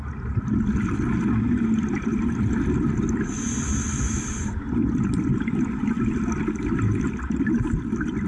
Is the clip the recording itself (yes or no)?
yes